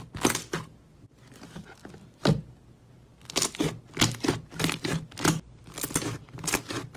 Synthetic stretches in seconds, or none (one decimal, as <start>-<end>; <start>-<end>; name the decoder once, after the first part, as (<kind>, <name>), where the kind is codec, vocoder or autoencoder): none